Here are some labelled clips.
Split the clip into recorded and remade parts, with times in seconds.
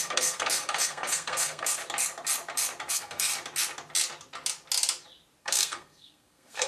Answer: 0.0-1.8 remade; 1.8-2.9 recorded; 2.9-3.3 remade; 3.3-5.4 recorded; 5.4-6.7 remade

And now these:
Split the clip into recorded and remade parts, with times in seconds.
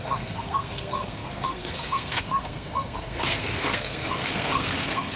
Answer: 0.0-5.2 remade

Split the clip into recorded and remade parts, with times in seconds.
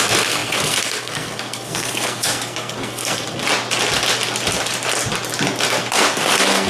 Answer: 0.0-3.4 remade; 3.4-5.8 recorded; 5.8-6.7 remade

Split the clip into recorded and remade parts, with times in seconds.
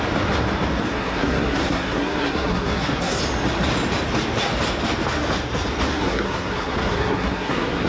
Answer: 0.0-0.9 recorded; 0.9-3.2 remade; 3.2-5.9 recorded; 5.9-7.9 remade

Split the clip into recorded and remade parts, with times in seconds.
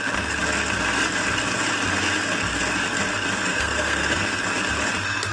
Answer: 0.0-3.5 recorded; 3.5-4.4 remade; 4.4-5.3 recorded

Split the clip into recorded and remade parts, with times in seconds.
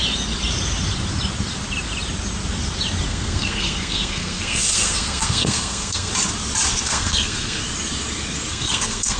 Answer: 0.0-3.1 recorded; 3.1-6.1 remade; 6.1-6.7 recorded; 6.7-7.6 remade; 7.6-8.5 recorded; 8.5-9.2 remade